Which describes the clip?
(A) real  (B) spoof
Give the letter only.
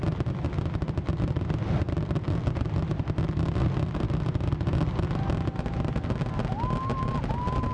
A